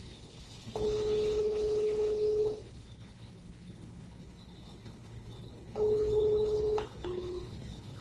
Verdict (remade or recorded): remade